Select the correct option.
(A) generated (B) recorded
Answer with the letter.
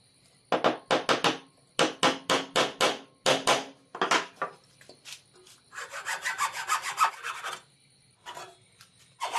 B